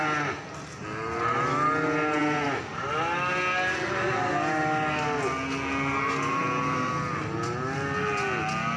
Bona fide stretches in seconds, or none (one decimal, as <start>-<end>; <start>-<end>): 0.0-8.8